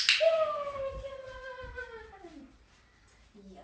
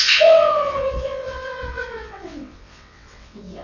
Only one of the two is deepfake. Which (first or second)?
second